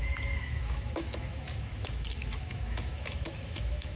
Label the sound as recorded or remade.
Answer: remade